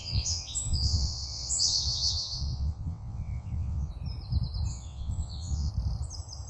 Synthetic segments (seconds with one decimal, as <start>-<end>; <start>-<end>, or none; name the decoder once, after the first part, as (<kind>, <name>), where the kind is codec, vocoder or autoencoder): 0.0-3.9 (vocoder, WaveNeXt); 4.7-5.7